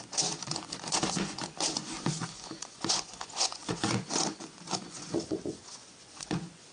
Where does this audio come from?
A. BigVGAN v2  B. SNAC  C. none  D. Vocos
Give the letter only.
D